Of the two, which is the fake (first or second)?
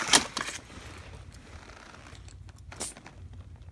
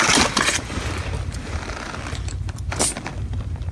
second